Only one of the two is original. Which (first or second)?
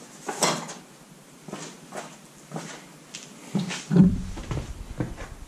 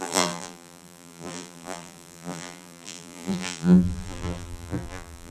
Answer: first